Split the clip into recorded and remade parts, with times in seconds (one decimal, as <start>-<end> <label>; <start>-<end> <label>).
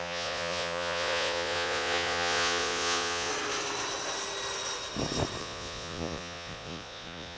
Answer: 0.0-3.3 remade; 3.3-5.4 recorded; 5.4-7.4 remade